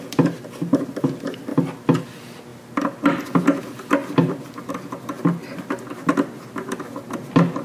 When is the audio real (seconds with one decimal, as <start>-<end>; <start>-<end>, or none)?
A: 0.0-1.5; 2.0-4.0; 4.7-7.6